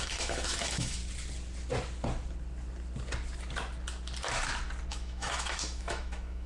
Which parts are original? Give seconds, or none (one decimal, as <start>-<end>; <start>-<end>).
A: 1.0-4.9